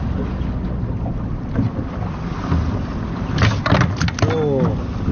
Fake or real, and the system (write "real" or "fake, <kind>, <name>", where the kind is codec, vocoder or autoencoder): real